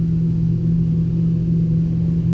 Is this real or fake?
real